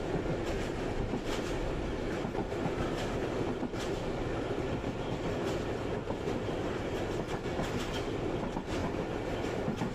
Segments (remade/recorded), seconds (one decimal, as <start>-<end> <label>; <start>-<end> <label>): 0.0-2.4 recorded; 2.4-2.9 remade; 2.9-9.9 recorded